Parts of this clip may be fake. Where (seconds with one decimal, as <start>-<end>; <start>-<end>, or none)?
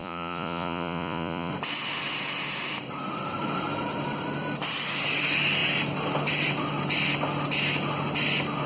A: 0.0-1.5